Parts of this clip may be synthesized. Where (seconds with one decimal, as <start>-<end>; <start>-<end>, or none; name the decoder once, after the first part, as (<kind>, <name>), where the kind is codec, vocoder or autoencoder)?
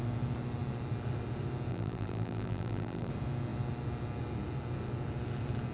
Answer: 1.7-3.1 (vocoder, BigVGAN v2)